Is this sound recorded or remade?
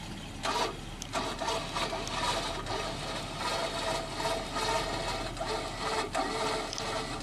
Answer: recorded